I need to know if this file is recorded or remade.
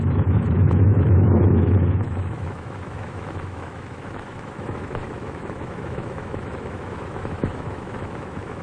remade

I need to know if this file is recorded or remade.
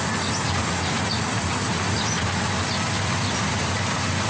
recorded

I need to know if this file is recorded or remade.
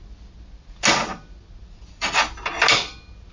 recorded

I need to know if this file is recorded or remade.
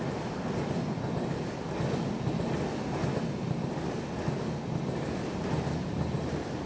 recorded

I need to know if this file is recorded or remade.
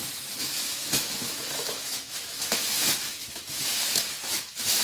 remade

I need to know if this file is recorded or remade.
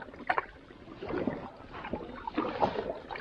recorded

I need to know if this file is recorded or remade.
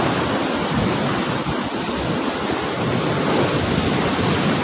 recorded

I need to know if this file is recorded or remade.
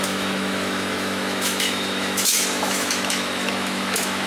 remade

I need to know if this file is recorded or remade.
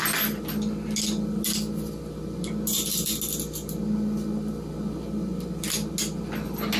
recorded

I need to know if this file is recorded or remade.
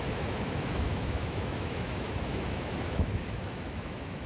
remade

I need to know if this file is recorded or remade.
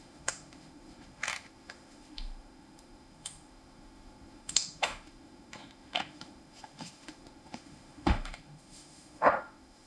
remade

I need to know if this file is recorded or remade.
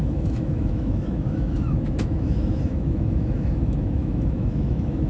remade